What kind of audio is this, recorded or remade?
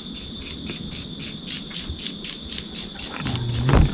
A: recorded